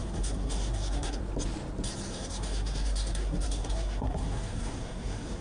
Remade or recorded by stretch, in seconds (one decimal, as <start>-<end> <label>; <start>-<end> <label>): 0.0-1.2 remade; 1.2-2.1 recorded; 2.1-5.4 remade